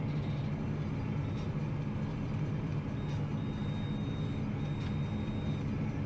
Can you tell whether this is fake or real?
real